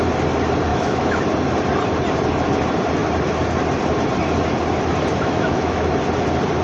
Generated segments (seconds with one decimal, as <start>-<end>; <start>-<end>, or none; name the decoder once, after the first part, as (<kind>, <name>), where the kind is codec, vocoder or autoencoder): 0.7-1.2 (autoencoder, DAC-VAE); 5.1-5.9